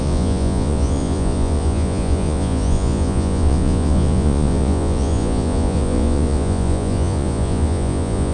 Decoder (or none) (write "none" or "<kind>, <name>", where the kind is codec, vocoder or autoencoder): vocoder, Vocos